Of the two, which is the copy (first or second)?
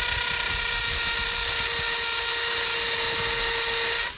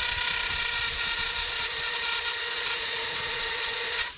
second